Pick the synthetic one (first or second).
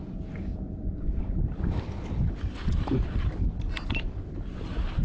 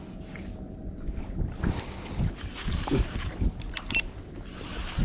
first